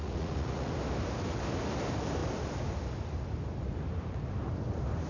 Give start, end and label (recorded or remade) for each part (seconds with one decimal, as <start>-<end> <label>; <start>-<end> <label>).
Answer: 0.0-0.7 remade; 0.7-5.1 recorded